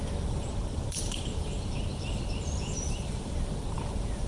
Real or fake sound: fake